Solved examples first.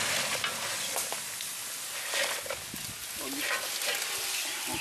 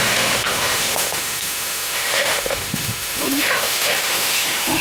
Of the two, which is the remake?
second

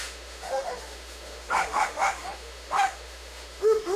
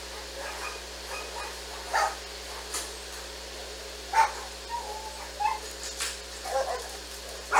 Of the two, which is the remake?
first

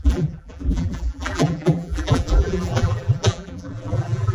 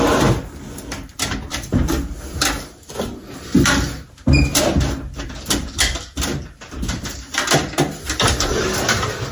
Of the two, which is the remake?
first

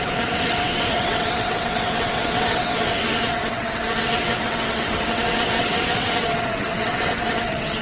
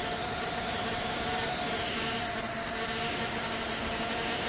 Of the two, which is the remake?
first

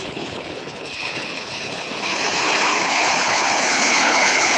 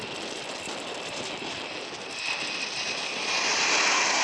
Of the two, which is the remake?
first